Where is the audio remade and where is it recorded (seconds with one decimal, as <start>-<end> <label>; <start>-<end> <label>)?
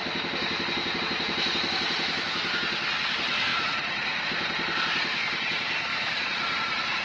0.0-3.5 recorded; 3.5-4.2 remade; 4.2-5.9 recorded; 5.9-7.0 remade